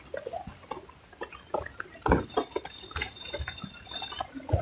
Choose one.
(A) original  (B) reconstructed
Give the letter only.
A